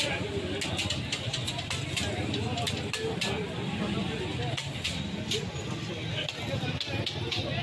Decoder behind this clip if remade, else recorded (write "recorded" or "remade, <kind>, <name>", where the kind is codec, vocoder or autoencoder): recorded